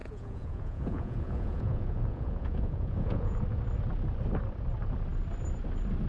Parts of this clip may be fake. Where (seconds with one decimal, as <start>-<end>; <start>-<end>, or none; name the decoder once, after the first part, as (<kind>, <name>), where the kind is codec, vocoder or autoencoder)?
0.0-3.4 (vocoder, Vocos)